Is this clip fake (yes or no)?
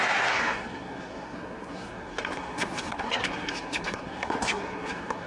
yes